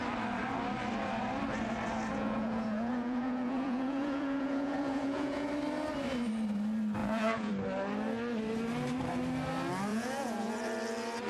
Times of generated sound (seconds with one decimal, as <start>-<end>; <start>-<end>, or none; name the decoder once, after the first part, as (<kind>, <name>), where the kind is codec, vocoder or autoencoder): 2.1-5.5 (vocoder, Vocos); 7.0-7.5; 9.9-10.5